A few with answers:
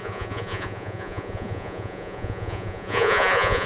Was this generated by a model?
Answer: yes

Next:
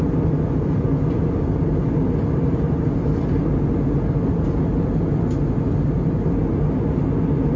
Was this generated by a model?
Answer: no